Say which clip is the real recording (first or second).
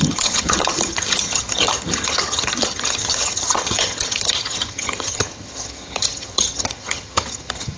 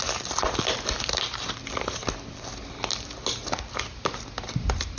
second